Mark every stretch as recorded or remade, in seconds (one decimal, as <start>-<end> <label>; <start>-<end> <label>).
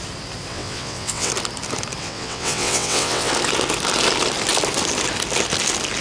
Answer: 0.0-0.5 recorded; 0.5-1.3 remade; 1.3-2.0 recorded; 2.0-3.3 remade; 3.3-6.0 recorded